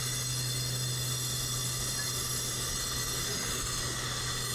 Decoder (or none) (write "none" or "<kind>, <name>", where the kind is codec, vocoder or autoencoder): none